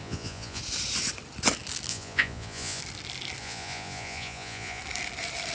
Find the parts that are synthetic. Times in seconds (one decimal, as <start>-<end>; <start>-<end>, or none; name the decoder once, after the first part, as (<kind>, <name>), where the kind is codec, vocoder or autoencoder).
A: 0.0-0.6 (vocoder, Vocos); 1.9-2.8; 3.4-4.8

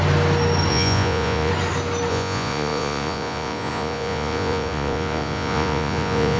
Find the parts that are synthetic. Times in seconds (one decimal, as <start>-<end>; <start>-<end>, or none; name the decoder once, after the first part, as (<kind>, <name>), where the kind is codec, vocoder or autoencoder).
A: 0.7-1.5 (vocoder, Vocos); 2.1-6.4

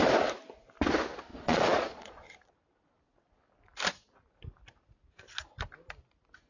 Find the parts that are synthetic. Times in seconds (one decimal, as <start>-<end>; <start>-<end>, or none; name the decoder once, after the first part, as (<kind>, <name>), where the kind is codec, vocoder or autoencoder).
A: 1.3-2.5 (vocoder, Vocos)

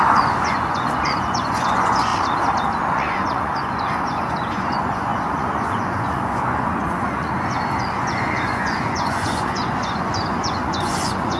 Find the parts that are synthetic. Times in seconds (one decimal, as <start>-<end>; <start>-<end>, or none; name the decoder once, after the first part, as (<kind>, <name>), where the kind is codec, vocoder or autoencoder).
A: 0.0-2.1 (vocoder, Vocos); 2.8-11.4

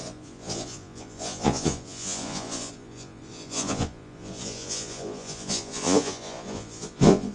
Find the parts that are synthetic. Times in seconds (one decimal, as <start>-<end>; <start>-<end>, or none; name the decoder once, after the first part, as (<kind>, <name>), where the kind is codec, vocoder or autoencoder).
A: 0.0-7.3 (vocoder, Vocos)

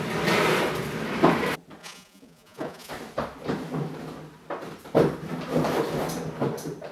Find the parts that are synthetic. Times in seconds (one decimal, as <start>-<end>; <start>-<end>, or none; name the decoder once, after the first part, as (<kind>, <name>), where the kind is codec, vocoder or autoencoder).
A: 1.8-2.9 (vocoder, Vocos)

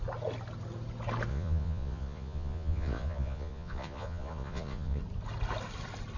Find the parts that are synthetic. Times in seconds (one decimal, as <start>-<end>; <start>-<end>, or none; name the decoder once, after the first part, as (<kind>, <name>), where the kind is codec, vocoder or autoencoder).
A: 1.3-5.0 (vocoder, Vocos)